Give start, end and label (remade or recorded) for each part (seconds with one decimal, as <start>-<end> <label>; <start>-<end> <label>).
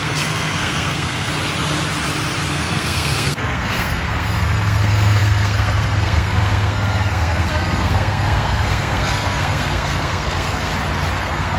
0.0-1.3 remade; 1.3-2.5 recorded; 2.5-10.7 remade; 10.7-11.2 recorded; 11.2-11.6 remade